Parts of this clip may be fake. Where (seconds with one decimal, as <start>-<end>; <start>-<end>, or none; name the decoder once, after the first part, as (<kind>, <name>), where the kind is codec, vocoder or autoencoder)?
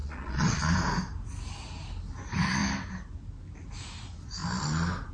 0.0-0.6 (vocoder, Vocos)